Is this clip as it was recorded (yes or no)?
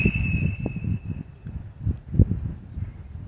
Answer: yes